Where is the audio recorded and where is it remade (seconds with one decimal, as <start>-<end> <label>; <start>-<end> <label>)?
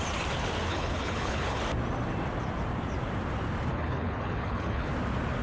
0.0-0.7 recorded; 0.7-1.6 remade; 1.6-3.7 recorded; 3.7-4.9 remade; 4.9-5.4 recorded